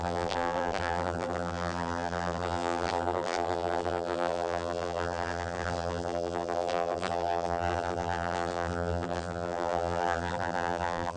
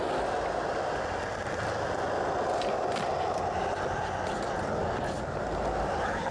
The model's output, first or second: first